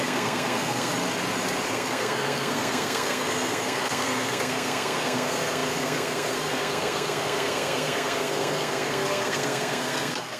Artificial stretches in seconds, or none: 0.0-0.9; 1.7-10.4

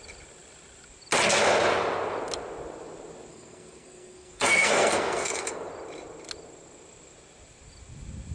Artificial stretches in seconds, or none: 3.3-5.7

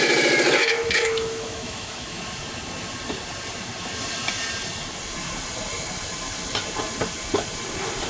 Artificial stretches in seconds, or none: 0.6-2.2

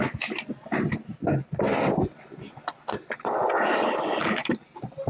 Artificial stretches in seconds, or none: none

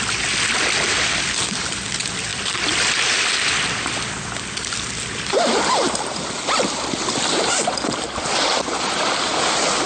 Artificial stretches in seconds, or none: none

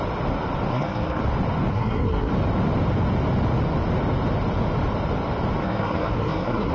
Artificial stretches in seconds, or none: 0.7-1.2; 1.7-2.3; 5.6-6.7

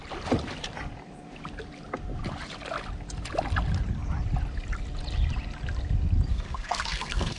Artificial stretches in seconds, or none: 6.3-7.4

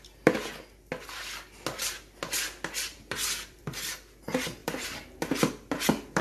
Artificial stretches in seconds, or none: 2.9-3.9; 4.6-5.4